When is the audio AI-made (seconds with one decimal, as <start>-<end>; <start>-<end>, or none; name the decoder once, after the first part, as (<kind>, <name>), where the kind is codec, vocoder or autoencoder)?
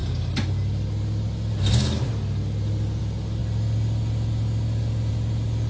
none